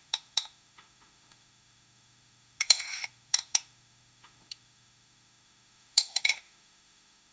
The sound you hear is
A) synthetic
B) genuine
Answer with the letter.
A